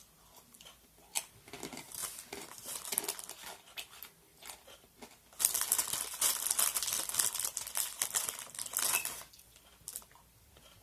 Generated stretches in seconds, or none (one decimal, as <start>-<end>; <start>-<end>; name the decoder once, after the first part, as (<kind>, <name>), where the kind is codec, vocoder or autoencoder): none